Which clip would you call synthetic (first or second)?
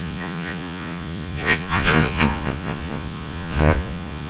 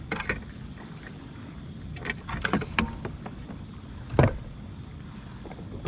first